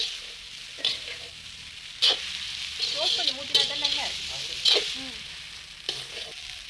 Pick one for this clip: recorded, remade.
recorded